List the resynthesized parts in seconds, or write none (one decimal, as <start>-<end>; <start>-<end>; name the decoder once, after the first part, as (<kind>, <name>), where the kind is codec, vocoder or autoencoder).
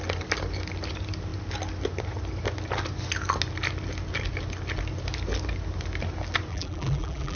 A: 6.5-7.4 (vocoder, BigVGAN v2)